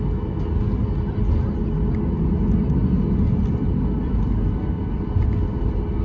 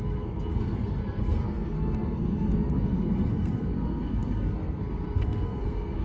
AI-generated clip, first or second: second